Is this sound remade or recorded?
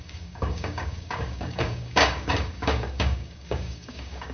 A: remade